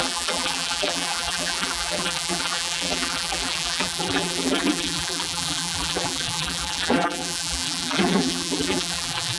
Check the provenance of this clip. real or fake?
fake